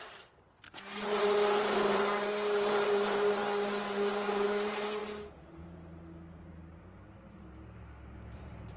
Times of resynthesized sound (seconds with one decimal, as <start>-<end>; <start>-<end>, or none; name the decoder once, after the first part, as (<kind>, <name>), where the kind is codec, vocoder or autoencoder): 0.0-3.4 (vocoder, BigVGAN v2); 4.1-5.0; 8.4-8.8